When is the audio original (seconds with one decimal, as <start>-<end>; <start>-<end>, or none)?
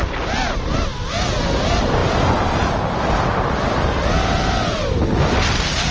0.0-5.9